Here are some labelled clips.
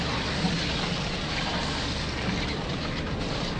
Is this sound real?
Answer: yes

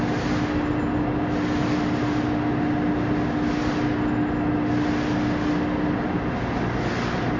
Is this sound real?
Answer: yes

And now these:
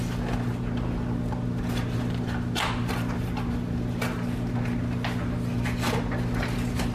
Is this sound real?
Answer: yes